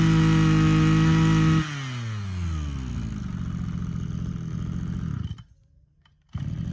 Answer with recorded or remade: recorded